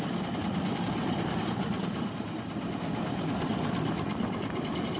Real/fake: real